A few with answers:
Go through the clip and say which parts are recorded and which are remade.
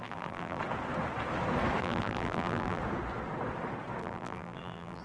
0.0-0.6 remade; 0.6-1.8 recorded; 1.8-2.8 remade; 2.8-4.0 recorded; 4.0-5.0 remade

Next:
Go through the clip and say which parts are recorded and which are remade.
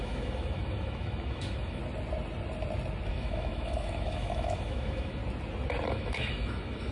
0.0-1.8 remade; 1.8-3.1 recorded; 3.1-5.2 remade; 5.2-5.9 recorded; 5.9-6.9 remade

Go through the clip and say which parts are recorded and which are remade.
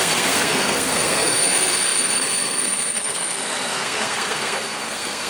0.0-5.3 remade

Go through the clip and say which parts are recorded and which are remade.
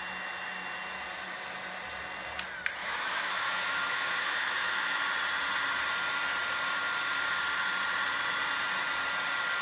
0.0-2.8 recorded; 2.8-5.0 remade; 5.0-9.6 recorded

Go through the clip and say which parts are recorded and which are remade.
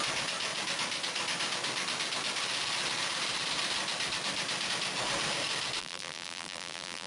0.0-5.8 recorded; 5.8-7.1 remade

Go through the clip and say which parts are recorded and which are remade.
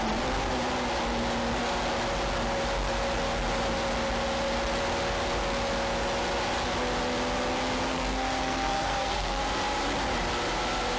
0.0-7.9 recorded; 7.9-9.4 remade; 9.4-11.0 recorded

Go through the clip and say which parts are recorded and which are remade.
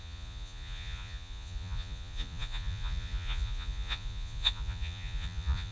0.0-5.7 remade